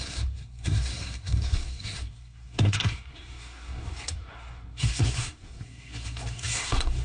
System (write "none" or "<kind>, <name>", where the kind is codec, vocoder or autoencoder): codec, SNAC